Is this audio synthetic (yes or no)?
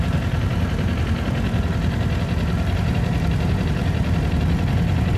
no